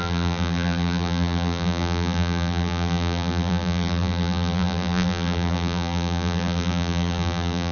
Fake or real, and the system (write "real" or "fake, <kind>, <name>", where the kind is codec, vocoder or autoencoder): fake, vocoder, BigVGAN v2